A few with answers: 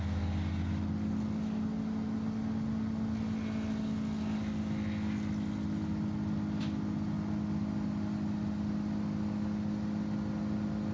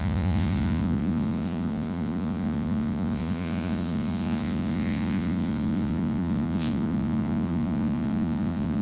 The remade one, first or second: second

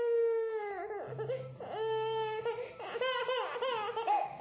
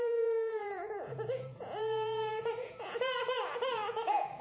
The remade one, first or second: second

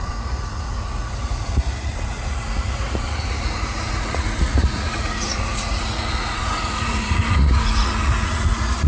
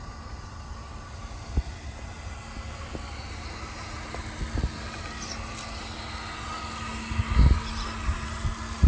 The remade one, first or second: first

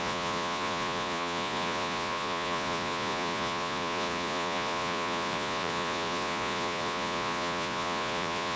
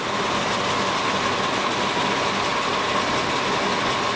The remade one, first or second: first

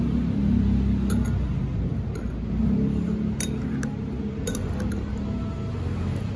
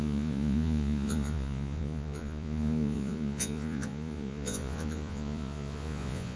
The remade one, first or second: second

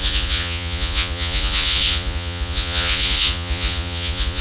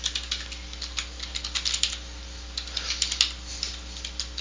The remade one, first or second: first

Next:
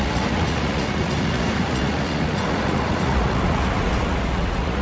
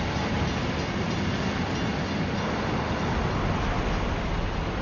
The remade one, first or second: first